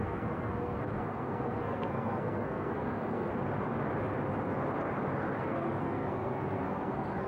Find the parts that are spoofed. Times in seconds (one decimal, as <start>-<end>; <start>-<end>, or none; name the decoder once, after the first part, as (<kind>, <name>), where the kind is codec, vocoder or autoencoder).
0.0-3.3 (codec, SNAC); 5.4-7.3